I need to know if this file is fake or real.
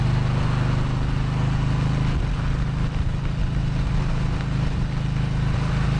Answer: real